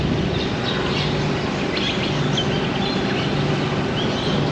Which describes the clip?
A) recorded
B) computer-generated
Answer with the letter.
A